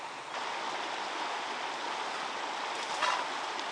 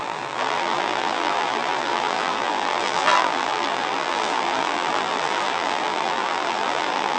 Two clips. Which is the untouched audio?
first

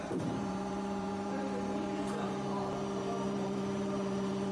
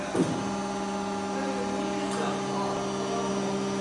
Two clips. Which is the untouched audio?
second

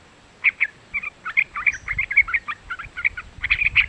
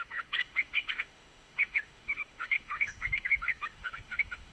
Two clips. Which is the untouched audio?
first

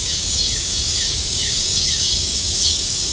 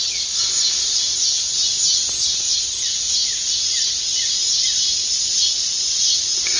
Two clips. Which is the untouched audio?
second